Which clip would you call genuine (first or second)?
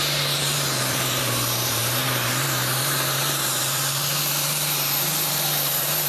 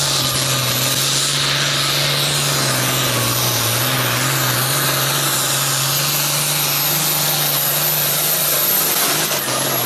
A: second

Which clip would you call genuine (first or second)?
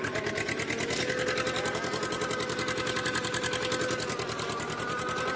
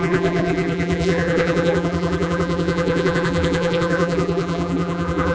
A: first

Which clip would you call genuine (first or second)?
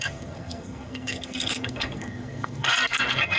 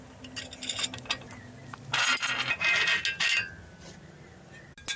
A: second